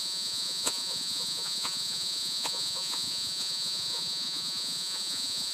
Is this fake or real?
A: fake